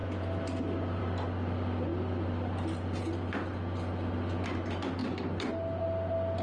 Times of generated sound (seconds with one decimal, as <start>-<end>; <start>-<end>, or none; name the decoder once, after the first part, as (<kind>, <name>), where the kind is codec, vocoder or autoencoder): none